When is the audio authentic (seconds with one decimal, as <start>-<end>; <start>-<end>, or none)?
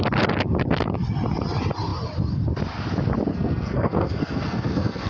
0.0-3.3